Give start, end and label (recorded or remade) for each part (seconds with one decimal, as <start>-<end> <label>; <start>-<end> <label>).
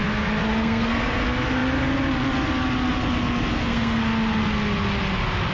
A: 0.0-0.5 recorded; 0.5-1.2 remade; 1.2-3.5 recorded; 3.5-4.0 remade; 4.0-5.5 recorded